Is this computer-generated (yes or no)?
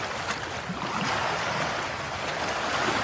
no